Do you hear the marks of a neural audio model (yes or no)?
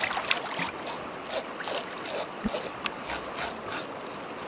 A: no